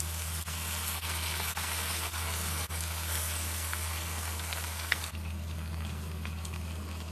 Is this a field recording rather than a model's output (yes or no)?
no